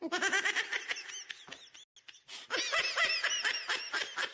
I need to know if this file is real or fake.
real